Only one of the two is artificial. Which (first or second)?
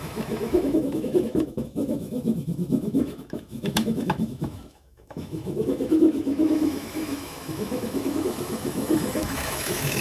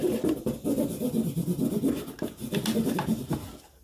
first